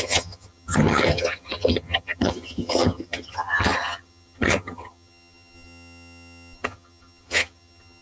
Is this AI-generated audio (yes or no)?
yes